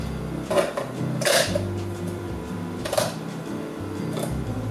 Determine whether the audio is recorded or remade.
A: remade